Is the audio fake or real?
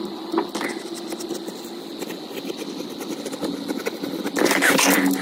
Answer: real